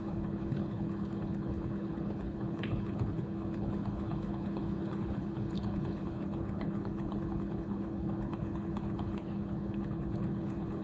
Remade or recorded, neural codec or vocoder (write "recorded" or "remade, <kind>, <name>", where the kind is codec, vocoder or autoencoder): remade, codec, HILCodec